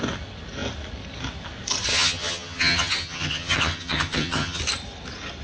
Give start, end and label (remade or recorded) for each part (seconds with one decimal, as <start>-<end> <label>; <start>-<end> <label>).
0.0-1.9 recorded; 1.9-4.6 remade; 4.6-5.4 recorded